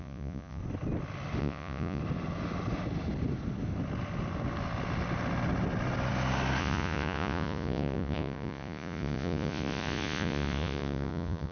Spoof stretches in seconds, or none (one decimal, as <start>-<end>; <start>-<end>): 0.0-0.6; 1.4-2.0; 6.6-11.5